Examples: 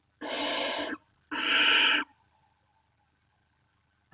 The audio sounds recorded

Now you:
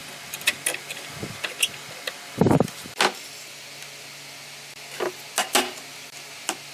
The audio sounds recorded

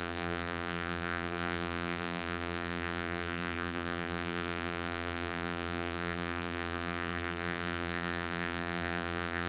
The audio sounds remade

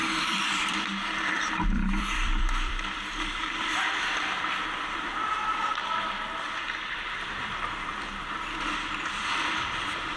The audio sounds remade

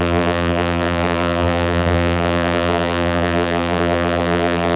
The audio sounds remade